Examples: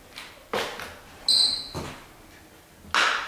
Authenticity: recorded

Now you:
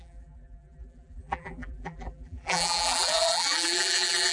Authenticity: remade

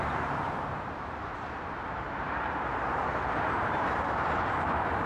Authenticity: remade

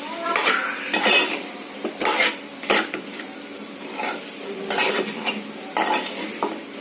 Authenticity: remade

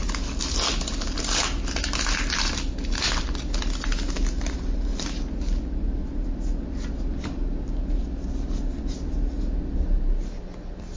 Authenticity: recorded